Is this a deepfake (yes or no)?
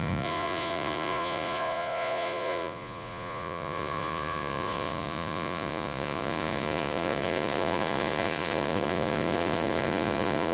yes